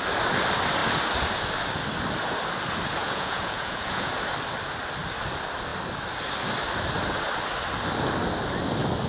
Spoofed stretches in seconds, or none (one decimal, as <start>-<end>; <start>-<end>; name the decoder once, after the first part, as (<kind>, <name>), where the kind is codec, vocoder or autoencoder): 3.0-4.1 (vocoder, Vocos)